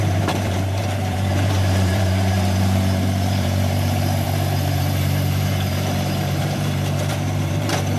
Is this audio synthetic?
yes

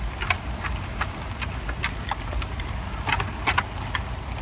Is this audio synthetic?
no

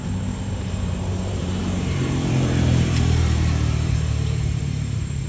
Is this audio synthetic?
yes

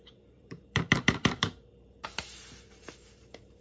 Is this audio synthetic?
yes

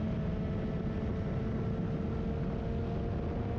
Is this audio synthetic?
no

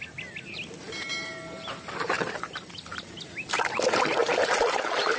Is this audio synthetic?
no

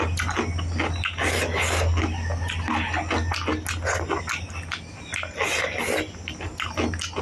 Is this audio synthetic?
no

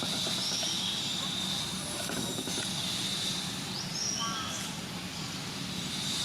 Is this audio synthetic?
no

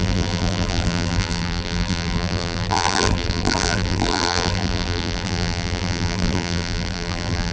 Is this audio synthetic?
yes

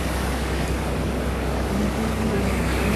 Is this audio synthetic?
yes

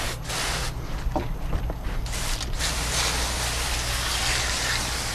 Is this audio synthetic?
no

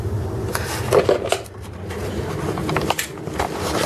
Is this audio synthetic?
no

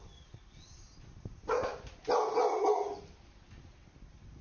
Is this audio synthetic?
no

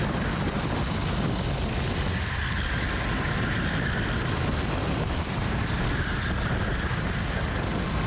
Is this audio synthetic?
no